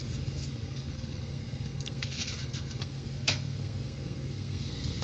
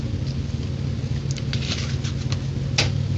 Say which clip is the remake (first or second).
first